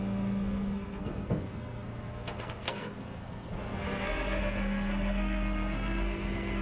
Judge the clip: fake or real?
fake